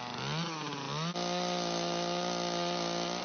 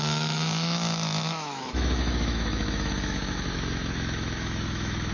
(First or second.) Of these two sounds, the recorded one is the first